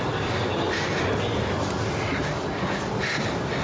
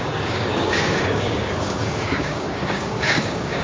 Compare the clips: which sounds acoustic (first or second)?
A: first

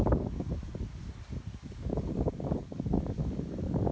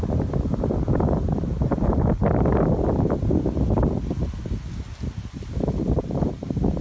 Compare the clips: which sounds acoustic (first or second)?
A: second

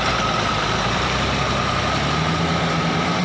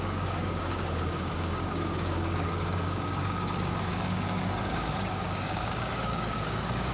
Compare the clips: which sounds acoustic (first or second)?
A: first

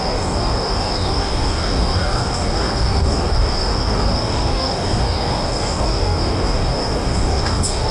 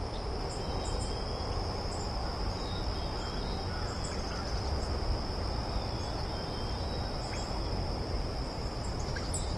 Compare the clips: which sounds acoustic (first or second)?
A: second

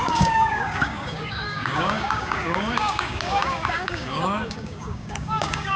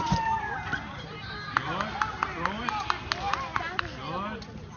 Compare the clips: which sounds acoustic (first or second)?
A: second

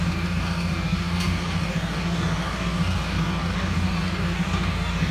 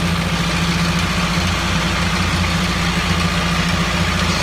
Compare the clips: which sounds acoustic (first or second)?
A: second